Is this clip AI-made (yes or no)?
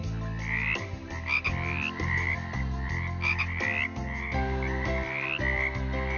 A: no